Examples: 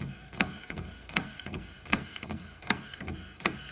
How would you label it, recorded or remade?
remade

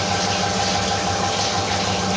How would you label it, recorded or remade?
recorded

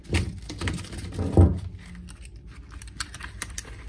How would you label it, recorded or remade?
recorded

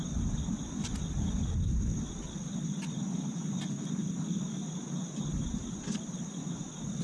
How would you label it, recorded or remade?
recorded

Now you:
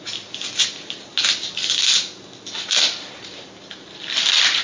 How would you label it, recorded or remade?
recorded